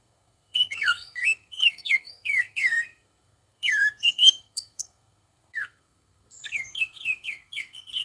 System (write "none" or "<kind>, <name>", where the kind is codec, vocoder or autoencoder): codec, SNAC